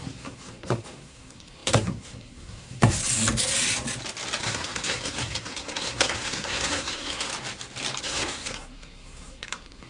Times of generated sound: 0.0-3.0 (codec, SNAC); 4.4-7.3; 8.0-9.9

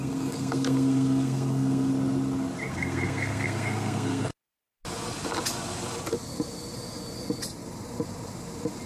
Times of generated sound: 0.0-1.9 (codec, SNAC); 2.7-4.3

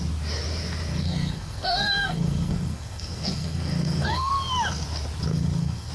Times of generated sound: 0.9-4.3 (codec, SNAC); 5.3-5.9

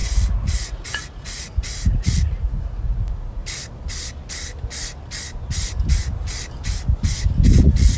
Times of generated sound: 0.0-3.4 (vocoder, Vocos); 7.6-8.0

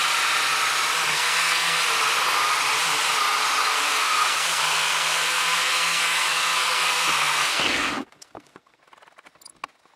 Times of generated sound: 1.1-1.8 (codec, SNAC); 3.6-8.8

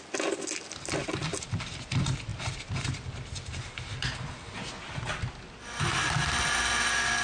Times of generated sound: none